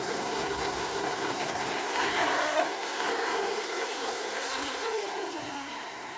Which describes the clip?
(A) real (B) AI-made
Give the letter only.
B